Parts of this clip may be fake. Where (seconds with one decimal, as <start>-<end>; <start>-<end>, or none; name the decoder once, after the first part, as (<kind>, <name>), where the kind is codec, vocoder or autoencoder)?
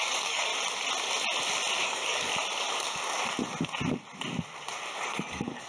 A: 0.0-0.5 (codec, DAC); 1.8-2.3; 5.0-5.7